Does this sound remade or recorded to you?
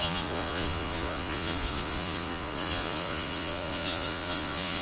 remade